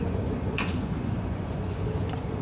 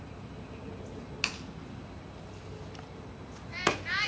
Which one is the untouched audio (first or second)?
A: second